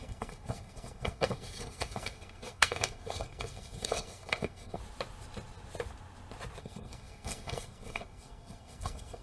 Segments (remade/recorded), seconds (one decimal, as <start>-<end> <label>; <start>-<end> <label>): 0.0-4.8 remade; 4.8-6.6 recorded; 6.6-9.2 remade